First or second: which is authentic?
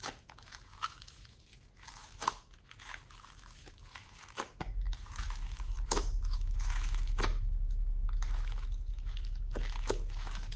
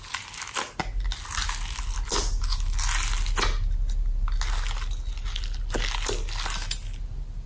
second